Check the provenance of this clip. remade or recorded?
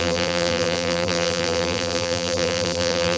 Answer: remade